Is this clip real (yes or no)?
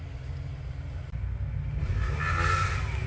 yes